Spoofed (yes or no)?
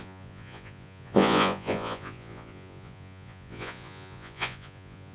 yes